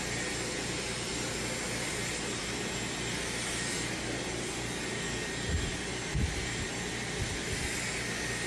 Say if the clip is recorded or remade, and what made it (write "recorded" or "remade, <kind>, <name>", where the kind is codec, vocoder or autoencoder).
recorded